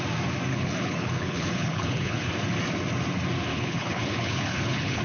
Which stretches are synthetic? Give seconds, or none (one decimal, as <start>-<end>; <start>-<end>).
0.5-2.3; 3.5-5.0